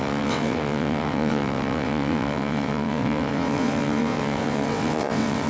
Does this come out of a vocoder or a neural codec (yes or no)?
yes